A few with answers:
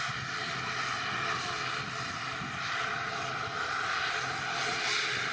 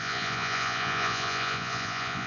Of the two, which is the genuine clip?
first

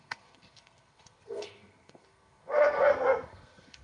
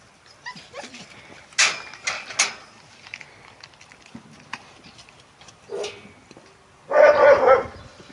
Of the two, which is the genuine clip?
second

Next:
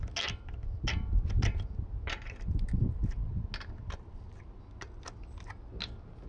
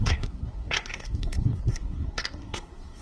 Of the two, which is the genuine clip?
first